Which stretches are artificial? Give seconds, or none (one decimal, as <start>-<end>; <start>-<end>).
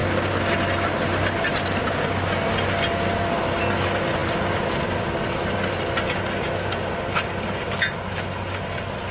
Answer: none